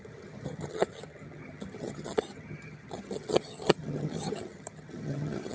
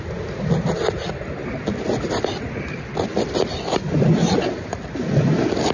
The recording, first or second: second